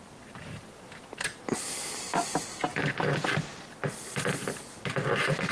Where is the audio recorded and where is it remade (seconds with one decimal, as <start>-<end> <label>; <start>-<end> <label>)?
0.0-5.5 recorded